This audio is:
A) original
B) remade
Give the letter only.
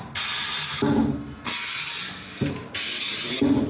A